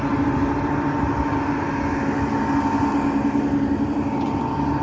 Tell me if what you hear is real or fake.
real